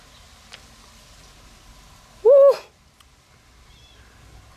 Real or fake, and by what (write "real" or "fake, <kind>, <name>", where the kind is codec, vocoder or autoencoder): real